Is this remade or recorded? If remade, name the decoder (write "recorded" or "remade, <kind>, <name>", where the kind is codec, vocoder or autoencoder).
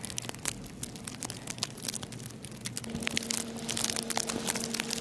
recorded